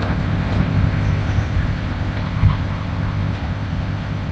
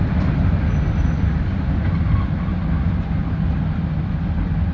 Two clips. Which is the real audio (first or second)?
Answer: second